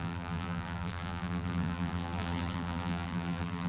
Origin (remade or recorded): remade